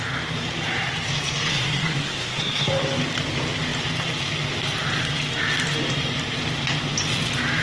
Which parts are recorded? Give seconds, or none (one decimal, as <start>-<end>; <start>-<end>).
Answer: 0.0-1.5; 2.7-7.6